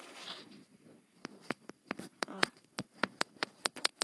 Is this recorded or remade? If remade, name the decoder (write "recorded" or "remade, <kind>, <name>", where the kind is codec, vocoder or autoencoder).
remade, vocoder, Vocos